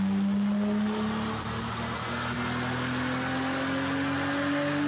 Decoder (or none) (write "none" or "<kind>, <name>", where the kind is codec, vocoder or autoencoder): none